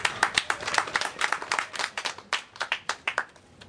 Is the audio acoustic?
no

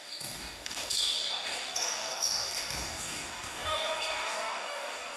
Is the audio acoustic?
no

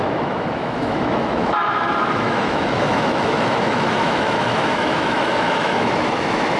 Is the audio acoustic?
no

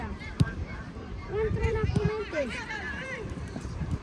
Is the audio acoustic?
no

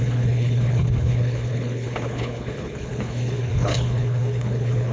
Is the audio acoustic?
no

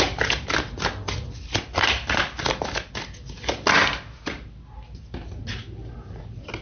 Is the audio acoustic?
yes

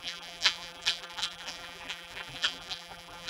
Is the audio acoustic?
no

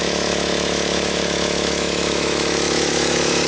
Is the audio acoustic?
no